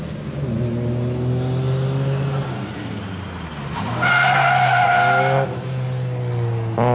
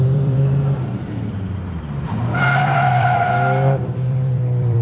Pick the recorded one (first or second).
first